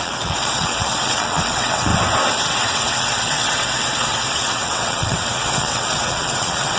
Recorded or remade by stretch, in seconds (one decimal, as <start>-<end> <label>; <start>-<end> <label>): 0.0-1.9 remade; 1.9-2.5 recorded; 2.5-6.8 remade